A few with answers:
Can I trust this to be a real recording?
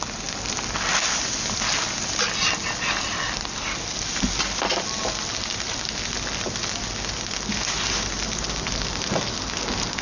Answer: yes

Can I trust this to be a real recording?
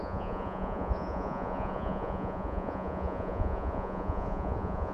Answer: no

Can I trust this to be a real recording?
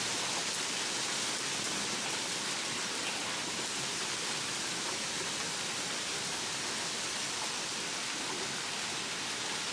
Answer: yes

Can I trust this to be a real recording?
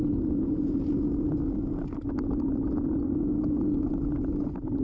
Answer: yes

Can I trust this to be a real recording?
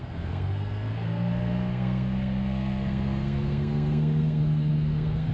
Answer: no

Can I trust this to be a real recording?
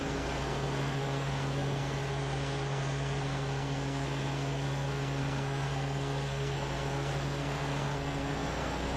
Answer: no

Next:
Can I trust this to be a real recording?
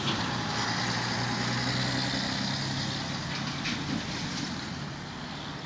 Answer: yes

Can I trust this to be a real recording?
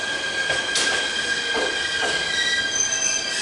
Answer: yes